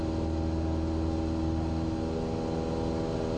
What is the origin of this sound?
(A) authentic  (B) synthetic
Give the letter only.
A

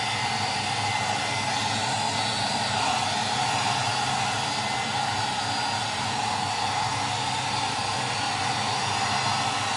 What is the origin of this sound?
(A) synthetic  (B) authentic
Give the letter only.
B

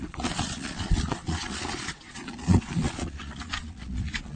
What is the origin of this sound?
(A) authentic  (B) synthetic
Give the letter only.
B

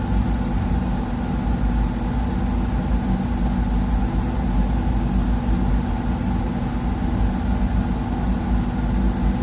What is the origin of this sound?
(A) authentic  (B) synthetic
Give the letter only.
A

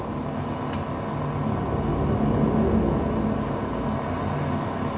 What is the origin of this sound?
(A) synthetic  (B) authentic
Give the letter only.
B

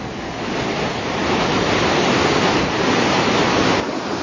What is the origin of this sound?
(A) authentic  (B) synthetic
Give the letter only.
A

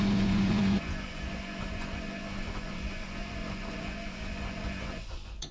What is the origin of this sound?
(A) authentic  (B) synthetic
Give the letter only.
B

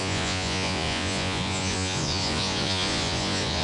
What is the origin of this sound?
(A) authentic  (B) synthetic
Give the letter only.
B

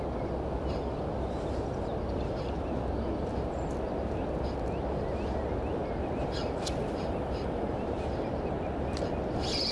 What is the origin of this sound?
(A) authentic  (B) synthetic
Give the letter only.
A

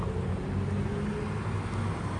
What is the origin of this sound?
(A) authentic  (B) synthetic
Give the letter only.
A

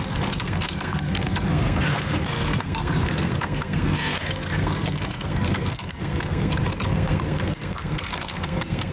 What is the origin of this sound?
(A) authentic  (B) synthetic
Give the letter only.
B